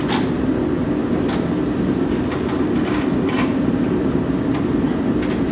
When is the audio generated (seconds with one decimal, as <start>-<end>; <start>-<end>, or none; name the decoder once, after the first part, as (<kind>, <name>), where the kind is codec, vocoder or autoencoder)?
1.0-4.3 (vocoder, BigVGAN v2)